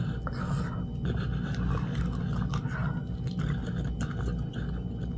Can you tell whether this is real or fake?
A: real